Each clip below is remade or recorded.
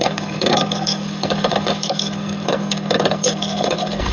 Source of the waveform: remade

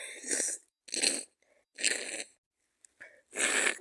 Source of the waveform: recorded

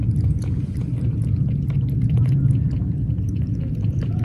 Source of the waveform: recorded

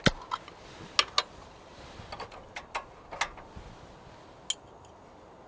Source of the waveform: recorded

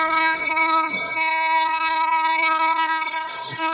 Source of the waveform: remade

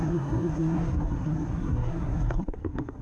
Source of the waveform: remade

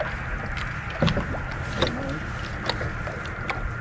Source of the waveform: recorded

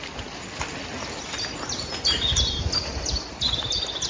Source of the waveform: recorded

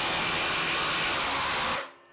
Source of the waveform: recorded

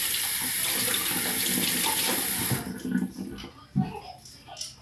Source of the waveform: recorded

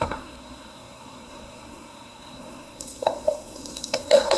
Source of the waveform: remade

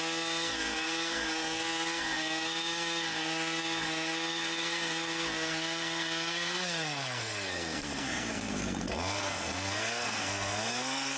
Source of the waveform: remade